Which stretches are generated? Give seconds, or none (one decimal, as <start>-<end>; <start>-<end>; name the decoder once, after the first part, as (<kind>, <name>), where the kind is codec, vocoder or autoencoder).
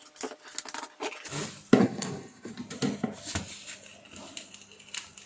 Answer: 1.8-2.5 (codec, SNAC)